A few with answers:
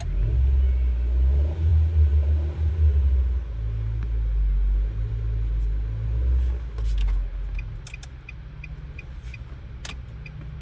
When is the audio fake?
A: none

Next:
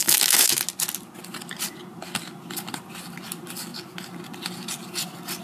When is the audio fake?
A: 0.0-0.6 (autoencoder, DAC-VAE)